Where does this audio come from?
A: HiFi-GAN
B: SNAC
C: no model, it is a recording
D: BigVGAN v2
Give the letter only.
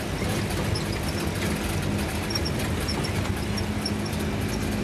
C